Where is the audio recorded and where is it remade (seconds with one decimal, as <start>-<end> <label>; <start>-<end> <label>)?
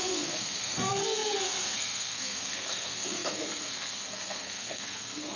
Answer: 0.0-5.4 remade